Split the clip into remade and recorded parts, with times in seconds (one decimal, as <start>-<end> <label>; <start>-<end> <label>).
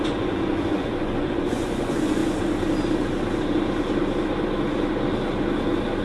0.0-2.2 remade; 2.2-6.0 recorded